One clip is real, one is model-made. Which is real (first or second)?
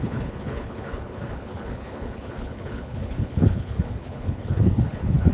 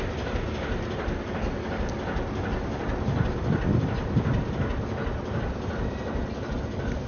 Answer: second